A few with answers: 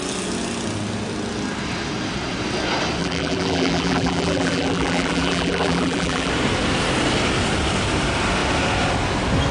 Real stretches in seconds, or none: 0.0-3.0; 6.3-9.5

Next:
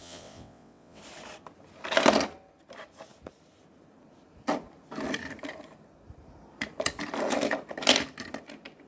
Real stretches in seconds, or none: 1.0-8.9